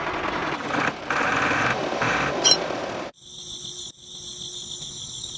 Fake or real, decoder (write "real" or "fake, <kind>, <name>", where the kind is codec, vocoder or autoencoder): real